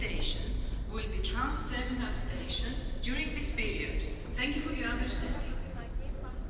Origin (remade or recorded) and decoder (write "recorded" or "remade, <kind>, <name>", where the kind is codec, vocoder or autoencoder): recorded